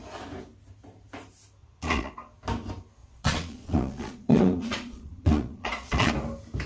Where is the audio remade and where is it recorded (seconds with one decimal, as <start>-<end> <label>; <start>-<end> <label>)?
0.0-1.6 recorded; 1.6-2.1 remade; 2.1-3.0 recorded; 3.0-6.1 remade; 6.1-6.7 recorded